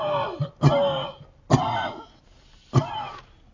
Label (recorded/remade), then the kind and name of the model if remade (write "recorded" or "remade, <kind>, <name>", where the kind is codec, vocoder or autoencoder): recorded